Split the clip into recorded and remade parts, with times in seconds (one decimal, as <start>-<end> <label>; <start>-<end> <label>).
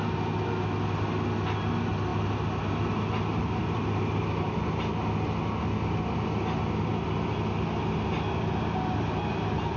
0.0-9.8 recorded